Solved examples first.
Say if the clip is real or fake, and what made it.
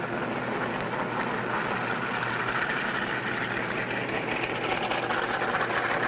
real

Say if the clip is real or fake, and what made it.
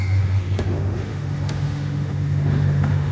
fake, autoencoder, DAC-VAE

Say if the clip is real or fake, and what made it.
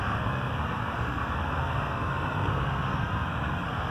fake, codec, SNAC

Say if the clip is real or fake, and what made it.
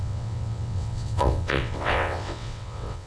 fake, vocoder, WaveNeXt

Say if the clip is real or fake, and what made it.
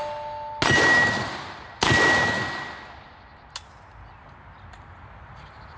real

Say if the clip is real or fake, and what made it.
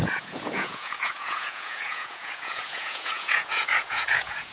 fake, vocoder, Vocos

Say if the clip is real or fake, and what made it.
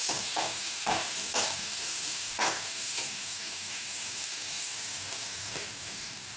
fake, codec, DAC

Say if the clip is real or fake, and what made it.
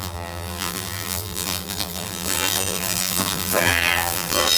fake, vocoder, BigVGAN v2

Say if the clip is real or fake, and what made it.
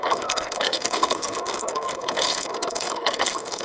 fake, codec, SNAC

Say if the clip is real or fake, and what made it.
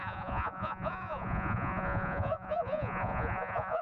fake, vocoder, Vocos